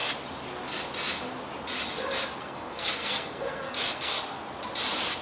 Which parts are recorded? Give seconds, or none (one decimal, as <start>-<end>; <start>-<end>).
0.0-2.4; 4.1-5.2

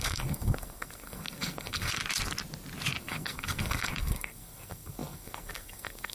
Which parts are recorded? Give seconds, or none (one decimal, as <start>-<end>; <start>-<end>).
2.0-3.0

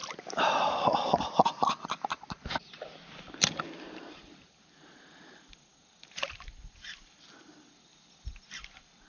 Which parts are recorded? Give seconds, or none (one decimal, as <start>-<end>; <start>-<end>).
0.0-9.1

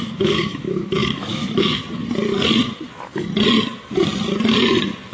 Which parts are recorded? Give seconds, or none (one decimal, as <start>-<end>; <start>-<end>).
1.8-5.1

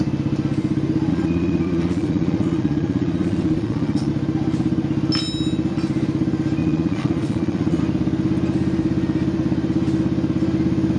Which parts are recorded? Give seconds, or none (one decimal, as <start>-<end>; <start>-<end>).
0.0-1.1; 4.1-6.6; 7.8-11.0